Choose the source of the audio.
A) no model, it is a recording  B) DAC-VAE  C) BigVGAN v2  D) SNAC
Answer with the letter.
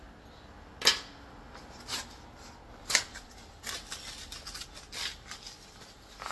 A